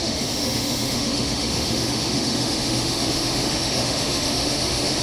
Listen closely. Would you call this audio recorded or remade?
remade